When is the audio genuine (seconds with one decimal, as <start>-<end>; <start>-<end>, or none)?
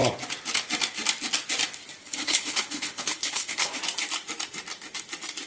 0.0-2.0; 3.8-5.5